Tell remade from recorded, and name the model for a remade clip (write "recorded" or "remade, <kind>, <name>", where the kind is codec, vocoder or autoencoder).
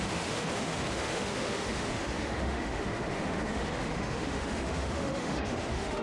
remade, autoencoder, DAC-VAE